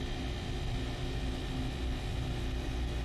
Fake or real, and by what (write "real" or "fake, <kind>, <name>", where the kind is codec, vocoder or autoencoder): real